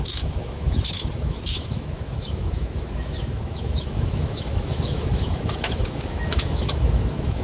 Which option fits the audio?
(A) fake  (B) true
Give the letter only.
A